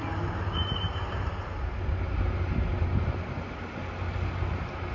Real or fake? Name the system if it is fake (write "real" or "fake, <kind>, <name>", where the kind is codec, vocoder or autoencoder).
real